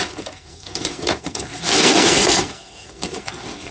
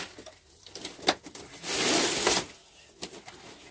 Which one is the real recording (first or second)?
second